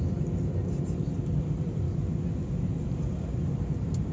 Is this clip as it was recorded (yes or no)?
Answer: yes